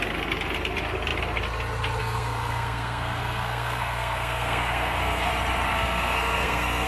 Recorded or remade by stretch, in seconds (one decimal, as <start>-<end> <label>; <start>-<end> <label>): 0.0-2.0 recorded; 2.0-5.3 remade; 5.3-5.7 recorded; 5.7-6.9 remade